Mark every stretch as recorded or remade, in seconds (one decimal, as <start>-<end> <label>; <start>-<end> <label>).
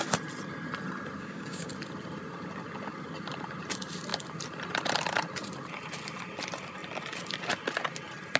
0.0-1.2 recorded; 1.2-1.7 remade; 1.7-8.4 recorded